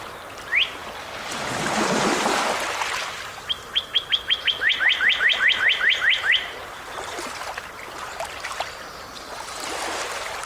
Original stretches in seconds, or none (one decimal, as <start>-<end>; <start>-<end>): 0.0-10.5